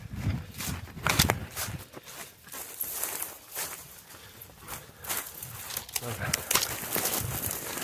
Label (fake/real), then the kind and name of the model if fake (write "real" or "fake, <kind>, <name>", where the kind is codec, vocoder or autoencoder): real